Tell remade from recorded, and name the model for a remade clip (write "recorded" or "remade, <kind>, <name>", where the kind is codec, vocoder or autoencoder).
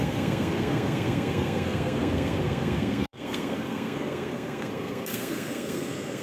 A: remade, codec, SNAC